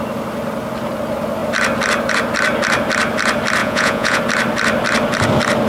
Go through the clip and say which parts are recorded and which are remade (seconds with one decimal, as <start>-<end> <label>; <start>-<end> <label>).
0.0-3.6 recorded; 3.6-4.2 remade; 4.2-5.7 recorded